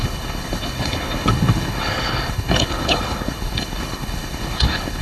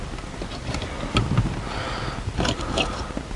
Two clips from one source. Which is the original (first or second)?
second